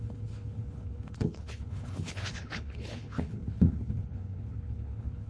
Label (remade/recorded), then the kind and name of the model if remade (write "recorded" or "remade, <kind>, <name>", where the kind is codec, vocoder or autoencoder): remade, codec, HILCodec